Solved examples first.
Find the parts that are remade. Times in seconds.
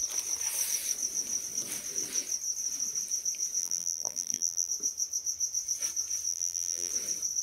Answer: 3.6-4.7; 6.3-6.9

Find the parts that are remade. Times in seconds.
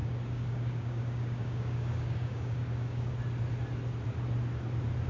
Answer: 0.0-3.1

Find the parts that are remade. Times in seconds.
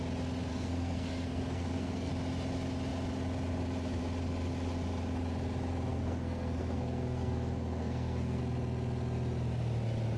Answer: 0.5-2.1; 5.9-8.4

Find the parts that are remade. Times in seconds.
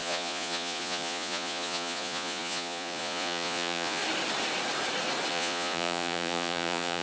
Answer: 0.0-4.0; 5.3-7.0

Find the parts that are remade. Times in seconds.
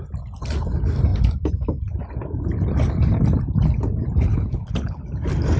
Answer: 4.3-5.0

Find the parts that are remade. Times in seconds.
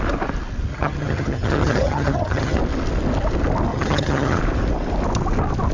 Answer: 0.7-2.6; 3.7-4.4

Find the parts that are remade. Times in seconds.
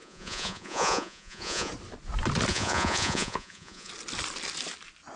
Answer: 0.0-1.7; 2.5-3.9